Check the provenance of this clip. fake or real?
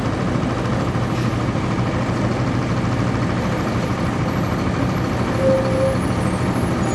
real